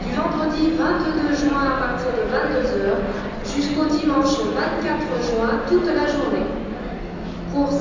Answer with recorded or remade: recorded